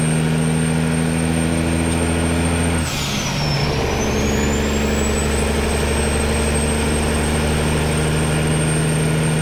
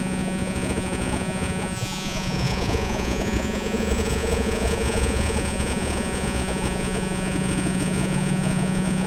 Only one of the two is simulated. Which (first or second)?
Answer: second